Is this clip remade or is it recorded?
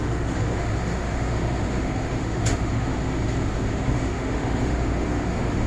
remade